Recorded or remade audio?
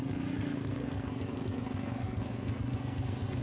remade